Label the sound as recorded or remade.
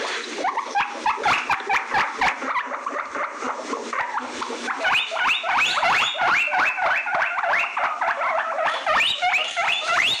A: remade